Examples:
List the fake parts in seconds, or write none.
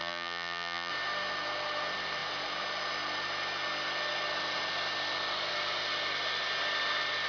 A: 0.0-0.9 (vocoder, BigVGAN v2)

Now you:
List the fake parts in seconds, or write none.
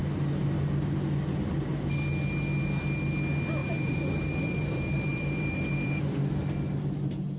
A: 3.6-6.0 (vocoder, BigVGAN v2)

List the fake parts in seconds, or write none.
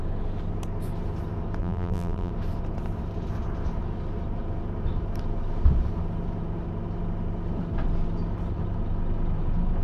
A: 1.6-2.3 (vocoder, BigVGAN v2)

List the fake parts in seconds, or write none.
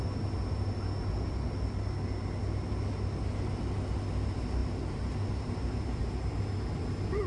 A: 4.6-6.4 (vocoder, BigVGAN v2)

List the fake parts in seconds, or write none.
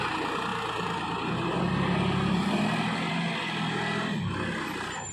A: none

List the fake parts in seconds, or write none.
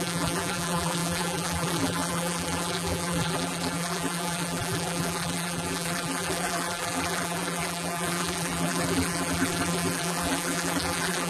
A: 0.0-11.3 (vocoder, BigVGAN v2)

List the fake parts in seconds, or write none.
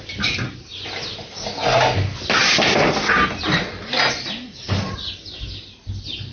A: none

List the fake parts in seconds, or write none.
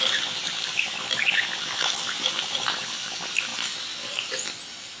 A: 0.0-3.5 (vocoder, BigVGAN v2); 4.1-5.0